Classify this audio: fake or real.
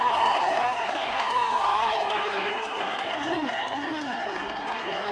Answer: fake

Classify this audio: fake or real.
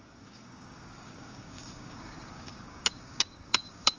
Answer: fake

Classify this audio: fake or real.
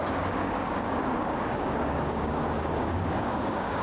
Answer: fake